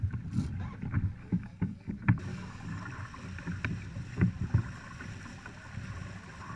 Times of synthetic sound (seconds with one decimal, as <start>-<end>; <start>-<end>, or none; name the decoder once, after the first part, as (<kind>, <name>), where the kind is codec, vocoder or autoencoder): 1.2-1.9 (codec, DAC); 2.3-2.8